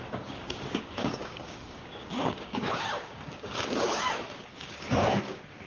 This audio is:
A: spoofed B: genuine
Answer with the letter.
A